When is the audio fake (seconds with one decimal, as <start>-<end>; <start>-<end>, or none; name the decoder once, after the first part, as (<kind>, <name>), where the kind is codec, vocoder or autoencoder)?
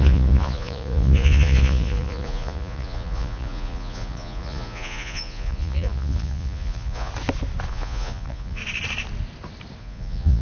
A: 0.0-7.1 (vocoder, Vocos); 7.7-8.6; 9.8-10.4